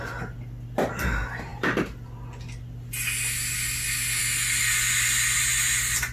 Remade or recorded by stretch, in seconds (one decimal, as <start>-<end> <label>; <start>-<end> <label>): 0.0-6.1 recorded